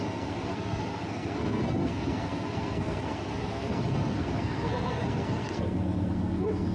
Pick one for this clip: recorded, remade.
remade